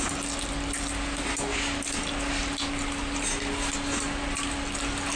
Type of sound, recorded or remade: recorded